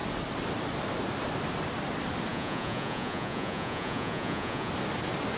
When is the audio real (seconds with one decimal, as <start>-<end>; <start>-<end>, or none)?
0.0-2.3; 4.7-5.4